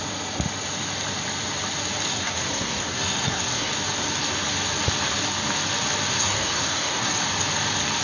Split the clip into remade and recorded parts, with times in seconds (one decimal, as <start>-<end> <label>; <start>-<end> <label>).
0.0-2.1 recorded; 2.1-3.7 remade; 3.7-6.1 recorded; 6.1-7.1 remade; 7.1-8.0 recorded